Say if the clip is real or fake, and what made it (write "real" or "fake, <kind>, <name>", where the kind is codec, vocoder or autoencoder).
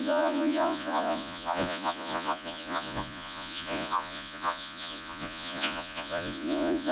fake, vocoder, Vocos